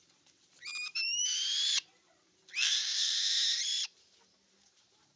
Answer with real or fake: fake